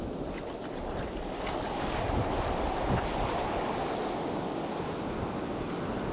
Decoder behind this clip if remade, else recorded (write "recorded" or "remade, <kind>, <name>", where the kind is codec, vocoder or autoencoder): recorded